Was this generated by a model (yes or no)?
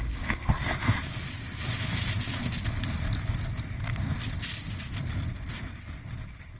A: no